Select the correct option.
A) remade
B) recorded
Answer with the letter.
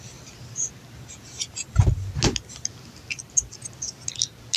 B